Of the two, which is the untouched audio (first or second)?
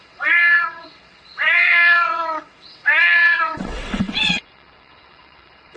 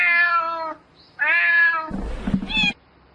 second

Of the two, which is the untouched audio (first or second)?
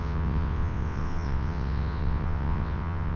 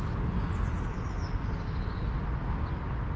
second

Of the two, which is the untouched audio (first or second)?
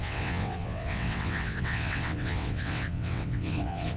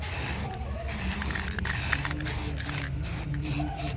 second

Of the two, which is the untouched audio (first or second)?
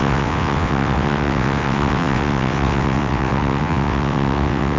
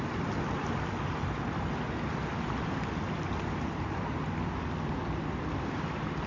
second